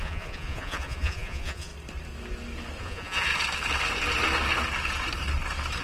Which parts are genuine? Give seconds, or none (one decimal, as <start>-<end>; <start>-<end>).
1.7-2.8; 3.3-5.8